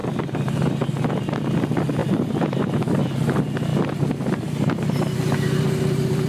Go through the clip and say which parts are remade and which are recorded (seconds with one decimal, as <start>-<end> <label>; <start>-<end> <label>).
0.0-0.9 remade; 0.9-2.0 recorded; 2.0-2.8 remade; 2.8-3.7 recorded; 3.7-6.3 remade

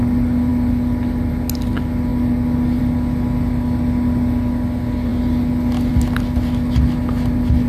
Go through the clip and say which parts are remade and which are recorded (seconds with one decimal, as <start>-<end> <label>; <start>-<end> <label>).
0.0-7.7 recorded

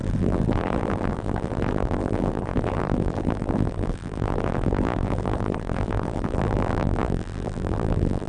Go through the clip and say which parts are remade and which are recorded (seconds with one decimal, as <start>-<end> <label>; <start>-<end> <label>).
0.0-8.3 remade

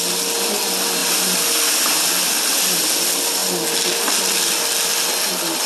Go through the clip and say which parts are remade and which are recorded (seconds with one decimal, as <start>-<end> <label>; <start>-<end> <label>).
0.0-1.0 recorded; 1.0-1.5 remade; 1.5-5.7 recorded

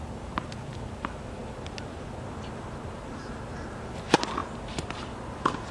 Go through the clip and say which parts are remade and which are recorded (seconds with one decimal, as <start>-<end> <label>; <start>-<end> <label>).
0.0-4.4 recorded; 4.4-5.7 remade

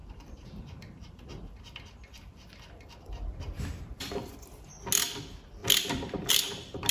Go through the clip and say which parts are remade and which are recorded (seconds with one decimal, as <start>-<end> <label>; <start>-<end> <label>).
0.0-4.1 remade; 4.1-5.6 recorded; 5.6-6.3 remade; 6.3-6.9 recorded